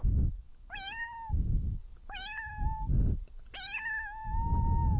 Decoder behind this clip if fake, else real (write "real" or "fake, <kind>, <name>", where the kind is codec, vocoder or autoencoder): real